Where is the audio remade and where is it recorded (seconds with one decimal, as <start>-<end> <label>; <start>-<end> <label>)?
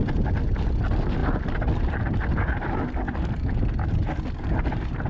0.0-5.1 recorded